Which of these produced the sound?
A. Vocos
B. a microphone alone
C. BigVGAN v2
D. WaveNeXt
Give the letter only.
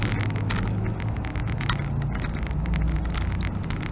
B